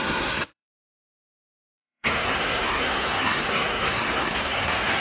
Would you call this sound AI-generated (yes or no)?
yes